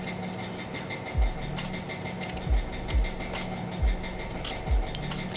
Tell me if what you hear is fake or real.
real